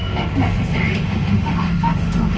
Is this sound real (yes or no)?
no